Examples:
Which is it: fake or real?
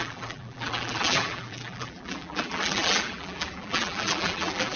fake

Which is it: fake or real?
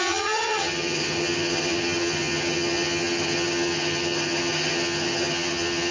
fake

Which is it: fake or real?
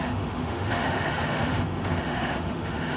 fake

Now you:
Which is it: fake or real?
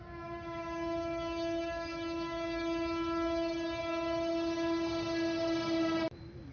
real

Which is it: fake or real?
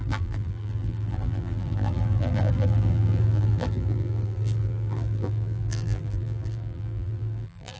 fake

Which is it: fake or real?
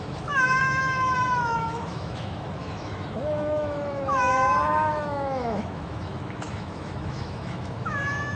fake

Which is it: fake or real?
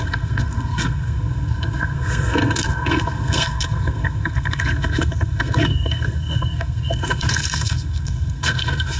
fake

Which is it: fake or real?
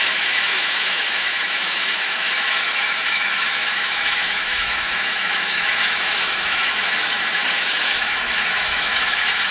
fake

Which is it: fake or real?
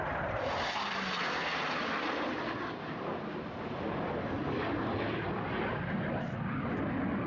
real